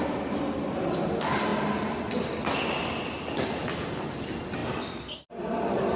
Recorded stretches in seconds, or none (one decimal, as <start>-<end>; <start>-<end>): 0.0-6.0